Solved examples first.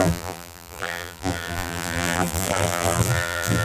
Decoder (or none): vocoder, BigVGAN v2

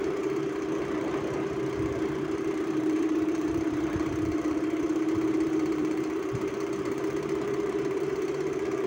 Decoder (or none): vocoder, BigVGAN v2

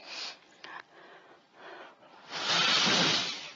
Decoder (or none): vocoder, BigVGAN v2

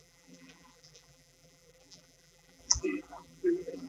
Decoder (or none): vocoder, BigVGAN v2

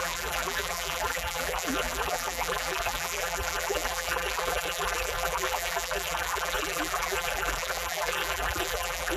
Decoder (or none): vocoder, BigVGAN v2